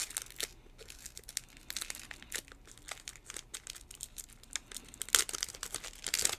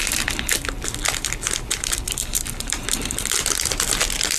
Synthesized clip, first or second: second